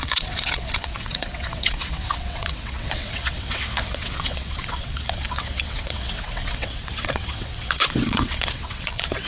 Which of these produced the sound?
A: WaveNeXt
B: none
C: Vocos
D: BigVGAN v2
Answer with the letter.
A